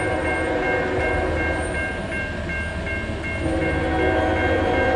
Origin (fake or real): real